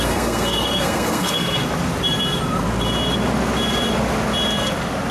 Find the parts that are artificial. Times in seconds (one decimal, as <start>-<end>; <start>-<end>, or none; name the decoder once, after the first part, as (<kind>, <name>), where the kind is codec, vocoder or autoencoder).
0.0-1.6 (codec, SNAC)